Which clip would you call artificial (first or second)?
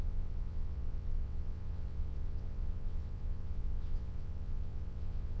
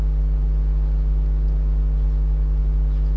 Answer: first